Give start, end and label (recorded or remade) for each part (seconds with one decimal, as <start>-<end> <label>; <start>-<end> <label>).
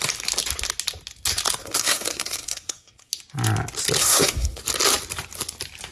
0.0-1.6 recorded; 1.6-3.1 remade; 3.1-4.0 recorded; 4.0-4.6 remade; 4.6-5.9 recorded